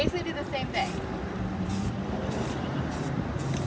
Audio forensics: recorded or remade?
recorded